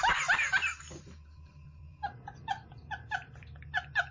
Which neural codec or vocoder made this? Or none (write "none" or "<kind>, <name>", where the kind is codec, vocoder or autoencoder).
vocoder, BigVGAN v2